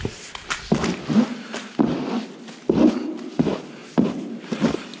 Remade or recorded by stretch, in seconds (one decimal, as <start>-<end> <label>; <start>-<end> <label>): 0.0-5.0 recorded